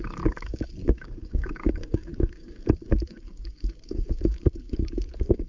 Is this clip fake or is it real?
fake